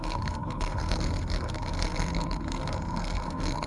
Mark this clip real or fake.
fake